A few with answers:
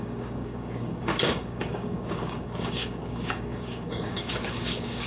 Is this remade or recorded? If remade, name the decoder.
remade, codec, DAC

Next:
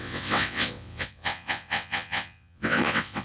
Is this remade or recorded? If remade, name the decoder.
remade, vocoder, WaveNeXt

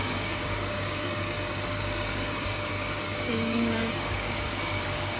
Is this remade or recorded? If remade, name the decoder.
remade, codec, DAC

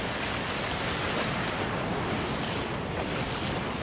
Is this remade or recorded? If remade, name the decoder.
recorded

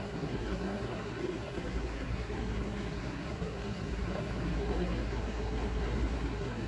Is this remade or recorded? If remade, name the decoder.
remade, codec, SNAC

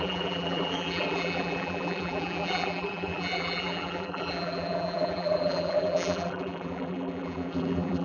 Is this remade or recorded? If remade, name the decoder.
remade, vocoder, BigVGAN v2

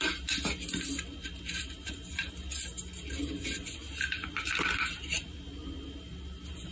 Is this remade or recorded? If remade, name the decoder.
recorded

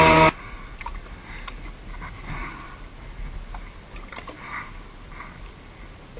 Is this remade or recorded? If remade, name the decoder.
recorded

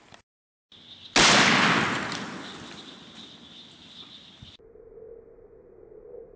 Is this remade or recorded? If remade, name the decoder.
recorded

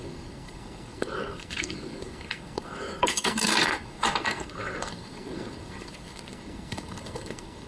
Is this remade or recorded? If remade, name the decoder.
remade, codec, SNAC